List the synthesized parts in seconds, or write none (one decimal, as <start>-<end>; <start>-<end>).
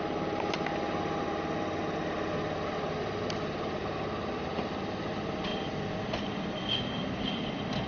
none